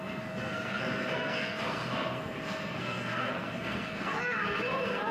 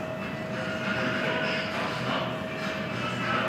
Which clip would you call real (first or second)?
second